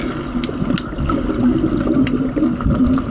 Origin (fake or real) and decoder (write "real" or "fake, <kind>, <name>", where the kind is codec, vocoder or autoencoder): real